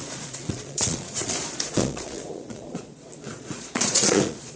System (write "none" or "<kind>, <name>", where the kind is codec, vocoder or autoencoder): vocoder, Vocos